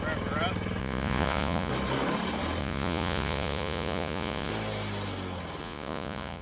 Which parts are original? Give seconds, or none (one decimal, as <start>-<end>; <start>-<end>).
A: 0.0-0.8; 1.7-2.6; 4.5-5.6

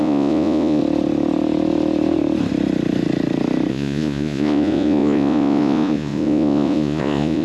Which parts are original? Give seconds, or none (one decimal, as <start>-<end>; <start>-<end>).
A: 0.8-3.7

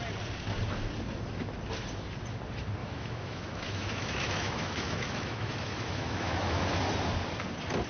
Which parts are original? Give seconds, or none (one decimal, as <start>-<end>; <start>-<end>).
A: 0.0-2.8; 6.8-7.9

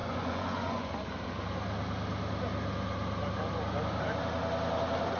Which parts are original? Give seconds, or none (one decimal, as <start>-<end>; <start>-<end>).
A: 0.9-5.2

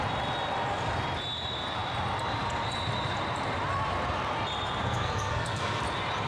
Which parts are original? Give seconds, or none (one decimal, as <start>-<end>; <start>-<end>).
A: 0.0-4.8; 5.8-6.3

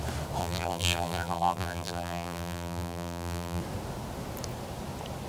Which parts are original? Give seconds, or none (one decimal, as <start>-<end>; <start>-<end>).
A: 0.0-0.4; 3.6-5.3

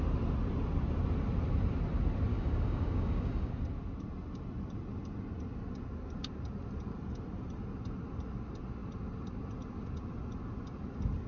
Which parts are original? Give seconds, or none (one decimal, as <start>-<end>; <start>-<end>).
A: 0.0-2.3; 3.5-11.3

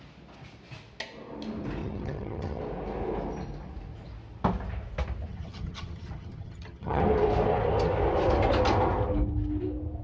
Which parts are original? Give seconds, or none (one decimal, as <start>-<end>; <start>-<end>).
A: 0.0-1.8; 2.6-5.3; 7.0-10.0